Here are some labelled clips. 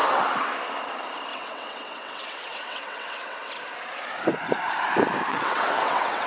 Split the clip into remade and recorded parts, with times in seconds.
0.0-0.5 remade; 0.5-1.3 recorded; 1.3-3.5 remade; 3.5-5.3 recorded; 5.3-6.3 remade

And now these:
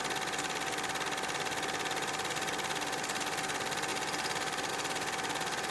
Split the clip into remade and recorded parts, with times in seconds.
0.0-3.9 recorded; 3.9-4.7 remade; 4.7-5.7 recorded

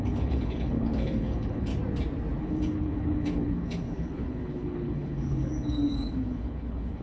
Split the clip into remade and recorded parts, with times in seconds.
0.0-1.7 remade; 1.7-2.4 recorded; 2.4-7.0 remade

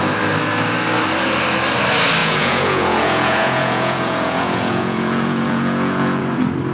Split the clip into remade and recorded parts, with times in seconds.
0.0-2.2 recorded; 2.2-6.2 remade; 6.2-6.7 recorded

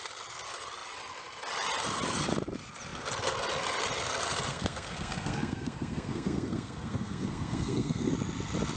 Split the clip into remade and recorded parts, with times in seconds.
0.0-4.5 recorded; 4.5-8.1 remade; 8.1-8.8 recorded